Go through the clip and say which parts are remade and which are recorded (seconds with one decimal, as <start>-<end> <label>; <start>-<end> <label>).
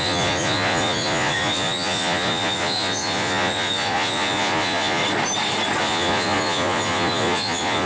0.0-5.0 remade; 5.0-5.8 recorded; 5.8-7.9 remade